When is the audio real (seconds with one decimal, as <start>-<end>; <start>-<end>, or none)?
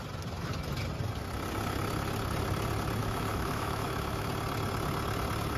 0.0-3.0; 4.3-5.6